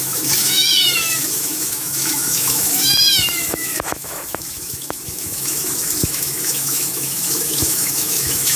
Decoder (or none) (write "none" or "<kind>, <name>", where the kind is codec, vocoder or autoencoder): autoencoder, DAC-VAE